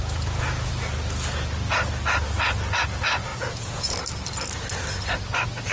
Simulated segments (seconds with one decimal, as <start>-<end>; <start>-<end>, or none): 0.0-0.8; 3.3-3.9